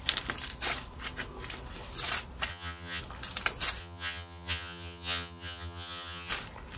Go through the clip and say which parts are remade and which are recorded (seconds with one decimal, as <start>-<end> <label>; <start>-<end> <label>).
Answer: 0.0-2.5 recorded; 2.5-3.0 remade; 3.0-3.8 recorded; 3.8-6.3 remade; 6.3-6.8 recorded